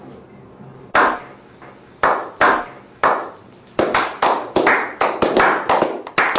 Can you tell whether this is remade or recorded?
recorded